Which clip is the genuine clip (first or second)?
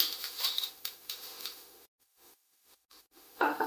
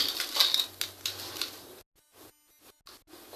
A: second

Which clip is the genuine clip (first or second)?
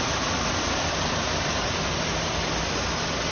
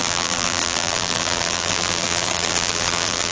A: first